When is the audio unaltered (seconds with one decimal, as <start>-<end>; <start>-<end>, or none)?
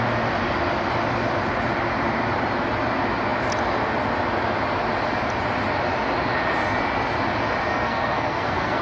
0.0-7.7